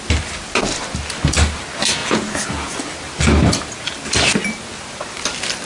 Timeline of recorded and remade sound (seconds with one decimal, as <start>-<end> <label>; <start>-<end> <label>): 0.0-2.0 recorded; 2.0-2.7 remade; 2.7-5.7 recorded